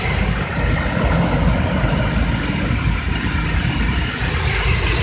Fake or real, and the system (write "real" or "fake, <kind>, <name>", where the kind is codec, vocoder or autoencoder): real